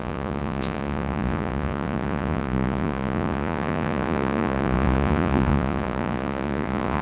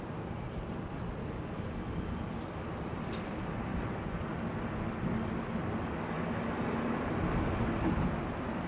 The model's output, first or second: first